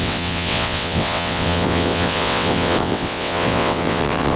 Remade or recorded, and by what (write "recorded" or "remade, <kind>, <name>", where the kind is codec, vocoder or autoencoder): remade, vocoder, WaveNeXt